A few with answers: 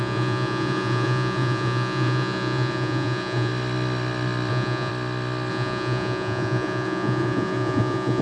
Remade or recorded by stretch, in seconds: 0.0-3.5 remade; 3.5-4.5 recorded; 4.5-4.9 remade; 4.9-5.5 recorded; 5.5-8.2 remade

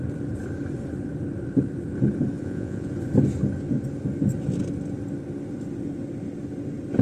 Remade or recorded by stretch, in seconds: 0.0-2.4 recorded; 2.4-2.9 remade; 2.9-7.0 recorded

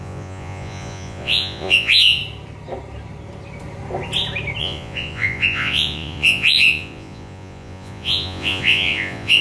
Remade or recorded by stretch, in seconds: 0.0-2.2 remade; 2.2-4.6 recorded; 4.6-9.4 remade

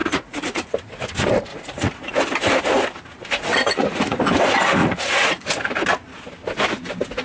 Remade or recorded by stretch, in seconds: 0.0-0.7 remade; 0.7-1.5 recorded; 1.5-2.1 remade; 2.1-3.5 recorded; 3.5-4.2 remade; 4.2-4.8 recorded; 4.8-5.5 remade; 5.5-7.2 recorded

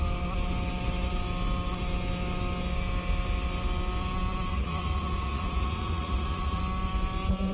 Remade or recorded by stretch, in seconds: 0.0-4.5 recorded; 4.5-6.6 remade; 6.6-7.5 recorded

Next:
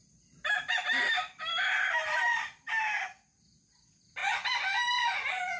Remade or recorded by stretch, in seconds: 0.0-5.6 recorded